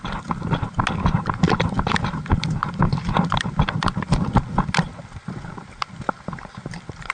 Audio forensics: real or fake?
real